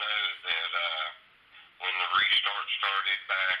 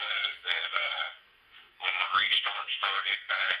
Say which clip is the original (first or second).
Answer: first